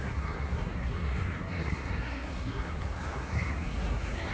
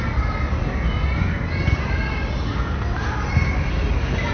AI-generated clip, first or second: first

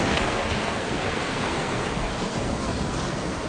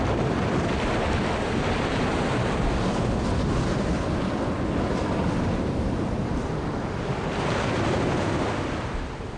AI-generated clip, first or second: first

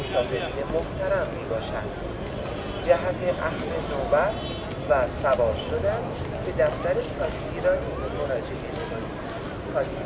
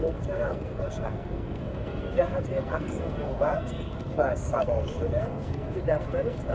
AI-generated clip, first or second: second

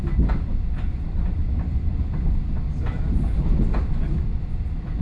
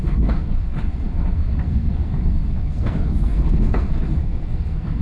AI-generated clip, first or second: second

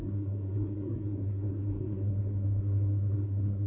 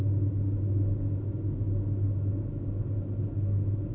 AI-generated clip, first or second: first